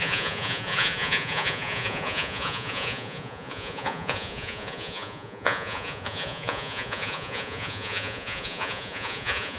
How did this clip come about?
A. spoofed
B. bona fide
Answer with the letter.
A